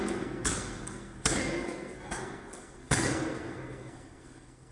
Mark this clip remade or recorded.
remade